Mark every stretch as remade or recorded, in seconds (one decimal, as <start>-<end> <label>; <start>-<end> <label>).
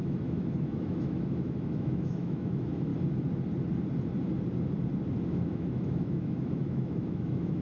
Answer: 0.0-2.9 remade; 2.9-5.3 recorded; 5.3-7.6 remade